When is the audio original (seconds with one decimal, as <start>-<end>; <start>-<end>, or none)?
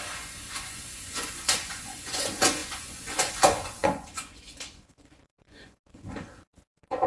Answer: none